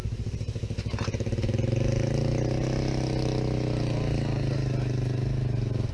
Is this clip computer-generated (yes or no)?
no